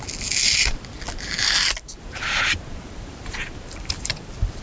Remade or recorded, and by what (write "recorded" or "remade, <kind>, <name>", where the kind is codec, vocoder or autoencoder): recorded